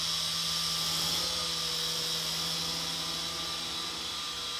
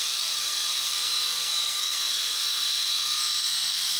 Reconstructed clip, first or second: second